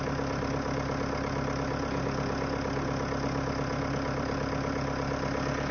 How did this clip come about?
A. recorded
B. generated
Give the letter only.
A